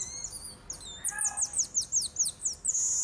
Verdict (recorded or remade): recorded